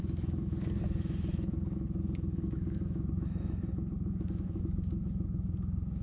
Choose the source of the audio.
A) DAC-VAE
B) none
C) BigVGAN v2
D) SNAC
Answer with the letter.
A